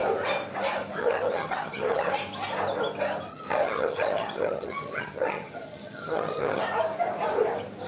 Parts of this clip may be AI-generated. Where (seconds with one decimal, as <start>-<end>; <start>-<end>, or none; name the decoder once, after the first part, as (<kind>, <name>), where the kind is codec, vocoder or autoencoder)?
1.0-2.1 (vocoder, HiFi-GAN); 3.3-6.6